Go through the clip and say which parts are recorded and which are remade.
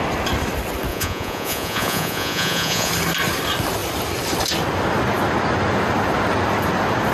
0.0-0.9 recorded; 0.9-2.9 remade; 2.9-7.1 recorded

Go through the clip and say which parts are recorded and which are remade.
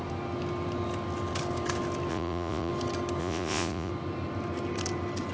0.0-2.1 recorded; 2.1-2.7 remade; 2.7-3.2 recorded; 3.2-3.9 remade; 3.9-5.3 recorded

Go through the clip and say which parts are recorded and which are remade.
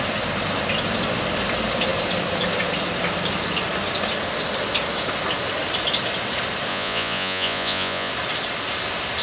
0.0-6.7 recorded; 6.7-8.1 remade; 8.1-9.2 recorded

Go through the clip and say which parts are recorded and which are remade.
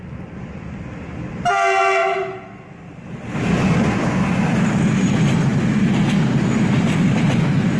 0.0-7.8 recorded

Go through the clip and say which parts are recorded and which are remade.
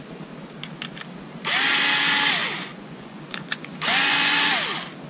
0.0-2.4 recorded; 2.4-4.5 remade; 4.5-5.1 recorded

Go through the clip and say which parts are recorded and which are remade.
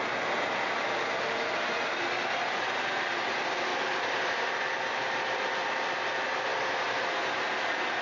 0.0-8.0 recorded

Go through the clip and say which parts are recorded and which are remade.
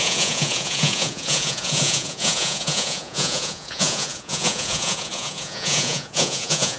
0.0-6.8 remade